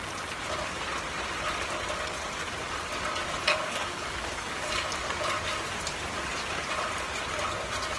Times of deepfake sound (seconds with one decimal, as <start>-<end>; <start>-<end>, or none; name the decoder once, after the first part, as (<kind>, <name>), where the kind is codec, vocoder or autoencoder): 3.5-5.2 (codec, DAC)